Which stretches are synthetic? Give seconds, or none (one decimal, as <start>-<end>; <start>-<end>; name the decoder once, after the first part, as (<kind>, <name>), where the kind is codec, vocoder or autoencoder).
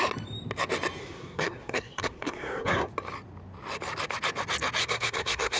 1.0-2.9 (codec, SNAC); 4.8-5.6